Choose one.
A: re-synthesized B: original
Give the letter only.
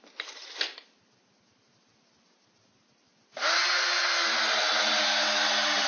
B